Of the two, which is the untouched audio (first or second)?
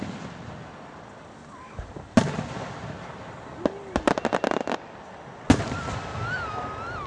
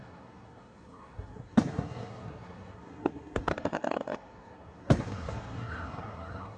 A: first